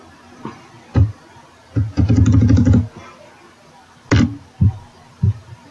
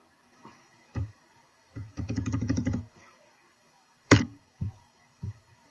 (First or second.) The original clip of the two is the first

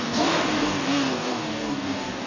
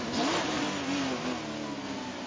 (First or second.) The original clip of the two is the second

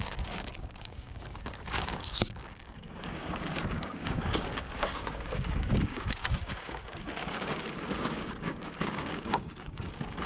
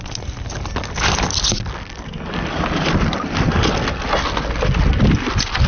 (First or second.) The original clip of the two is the second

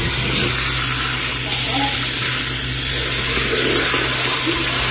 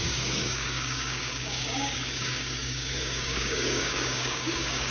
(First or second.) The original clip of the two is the first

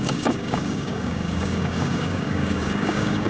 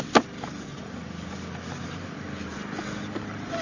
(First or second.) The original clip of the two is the second